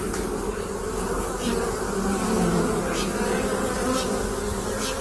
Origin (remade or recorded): recorded